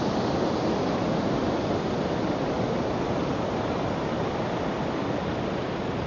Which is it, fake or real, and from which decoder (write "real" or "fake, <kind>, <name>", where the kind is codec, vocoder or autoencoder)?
real